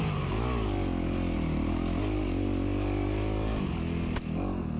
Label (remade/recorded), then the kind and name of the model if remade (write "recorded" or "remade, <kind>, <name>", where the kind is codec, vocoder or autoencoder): recorded